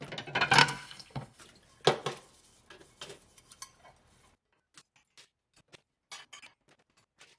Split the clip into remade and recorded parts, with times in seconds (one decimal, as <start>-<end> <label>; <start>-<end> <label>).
0.0-0.6 recorded; 0.6-1.4 remade; 1.4-7.4 recorded

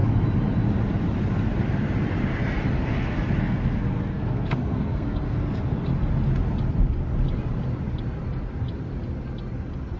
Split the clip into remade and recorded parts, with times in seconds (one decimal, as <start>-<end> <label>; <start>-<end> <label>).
0.0-2.9 recorded; 2.9-5.9 remade; 5.9-10.0 recorded

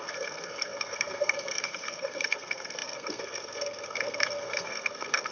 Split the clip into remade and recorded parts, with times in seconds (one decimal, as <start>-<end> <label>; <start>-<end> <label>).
0.0-5.3 remade

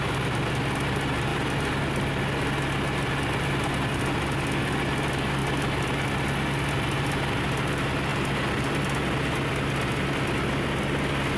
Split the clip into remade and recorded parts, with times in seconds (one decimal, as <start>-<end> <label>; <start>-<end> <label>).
0.0-11.4 recorded

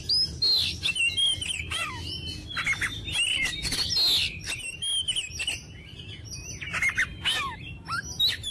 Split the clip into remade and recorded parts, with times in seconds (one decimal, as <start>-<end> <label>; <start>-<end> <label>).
0.0-8.5 recorded

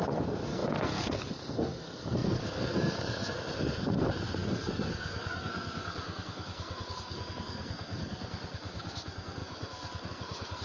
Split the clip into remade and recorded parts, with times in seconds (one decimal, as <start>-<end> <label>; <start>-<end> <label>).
0.0-10.6 remade

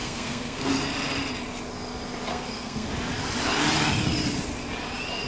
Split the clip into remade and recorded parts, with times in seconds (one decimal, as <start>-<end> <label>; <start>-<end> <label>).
0.0-0.7 remade; 0.7-2.3 recorded; 2.3-2.9 remade; 2.9-5.3 recorded